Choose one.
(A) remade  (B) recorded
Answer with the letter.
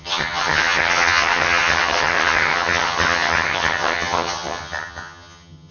A